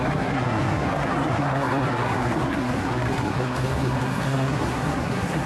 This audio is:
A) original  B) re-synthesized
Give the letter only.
B